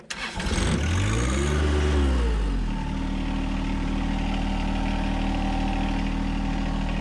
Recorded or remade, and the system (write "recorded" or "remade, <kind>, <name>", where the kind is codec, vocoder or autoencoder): recorded